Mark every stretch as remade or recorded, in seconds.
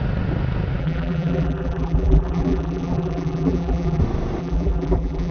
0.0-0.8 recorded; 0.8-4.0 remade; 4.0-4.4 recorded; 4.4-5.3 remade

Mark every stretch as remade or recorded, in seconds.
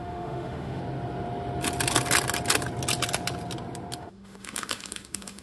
0.0-0.8 remade; 0.8-4.0 recorded; 4.0-5.4 remade